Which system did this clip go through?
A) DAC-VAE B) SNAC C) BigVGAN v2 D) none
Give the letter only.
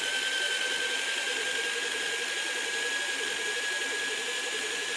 D